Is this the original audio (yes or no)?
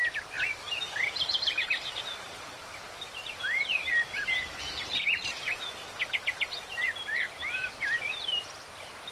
no